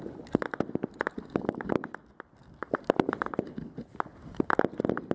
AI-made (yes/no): no